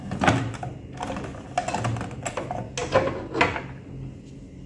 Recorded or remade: recorded